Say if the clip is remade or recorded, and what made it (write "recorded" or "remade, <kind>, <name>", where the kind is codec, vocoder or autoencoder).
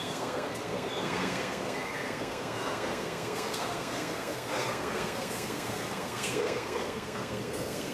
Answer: remade, codec, SNAC